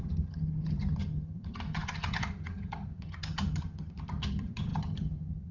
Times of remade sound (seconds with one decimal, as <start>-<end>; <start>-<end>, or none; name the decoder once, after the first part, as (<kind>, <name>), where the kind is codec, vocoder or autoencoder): 0.0-5.5 (vocoder, HiFi-GAN)